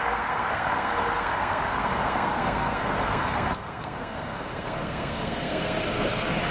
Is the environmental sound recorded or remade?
remade